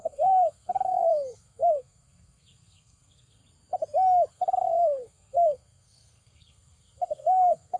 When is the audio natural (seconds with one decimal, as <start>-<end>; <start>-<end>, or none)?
3.4-4.3